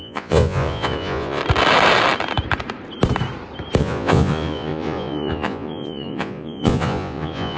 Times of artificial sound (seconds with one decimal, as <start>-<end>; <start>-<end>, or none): 0.0-1.4; 3.8-7.6